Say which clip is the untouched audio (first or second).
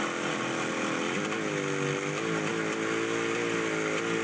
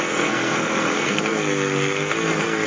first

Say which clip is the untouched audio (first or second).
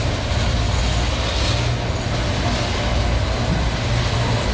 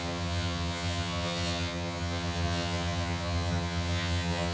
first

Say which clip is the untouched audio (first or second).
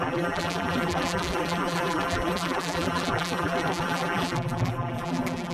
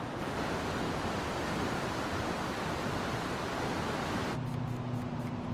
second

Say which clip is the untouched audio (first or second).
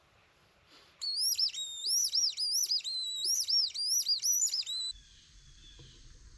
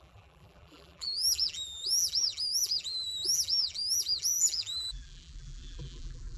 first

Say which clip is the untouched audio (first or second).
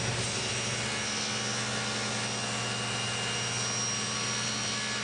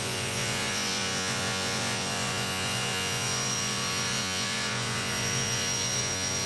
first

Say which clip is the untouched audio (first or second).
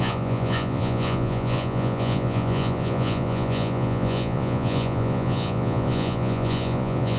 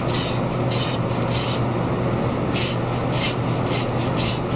second